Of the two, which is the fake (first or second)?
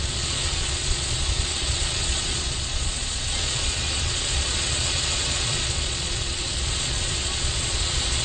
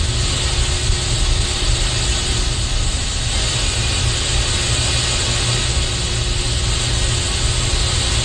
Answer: first